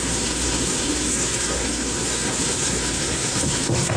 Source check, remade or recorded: remade